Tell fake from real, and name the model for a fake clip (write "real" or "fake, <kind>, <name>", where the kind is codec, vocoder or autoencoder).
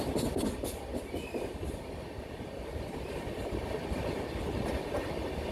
real